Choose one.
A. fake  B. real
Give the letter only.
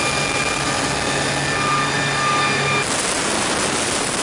B